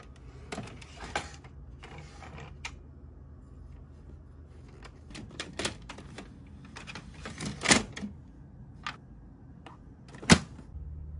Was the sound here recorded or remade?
recorded